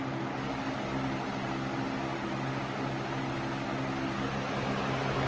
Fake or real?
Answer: real